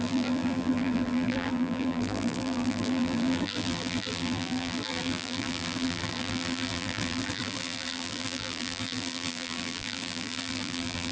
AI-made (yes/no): yes